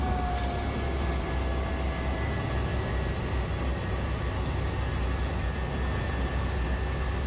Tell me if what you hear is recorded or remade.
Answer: recorded